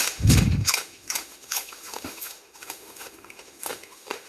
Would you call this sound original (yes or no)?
no